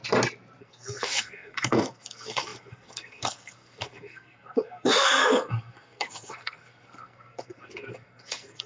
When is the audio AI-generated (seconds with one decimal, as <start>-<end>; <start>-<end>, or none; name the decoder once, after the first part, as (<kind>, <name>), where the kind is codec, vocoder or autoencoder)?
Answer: 0.6-8.7 (codec, SNAC)